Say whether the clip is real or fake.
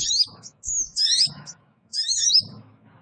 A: fake